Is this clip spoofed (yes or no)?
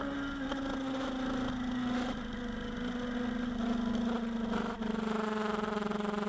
no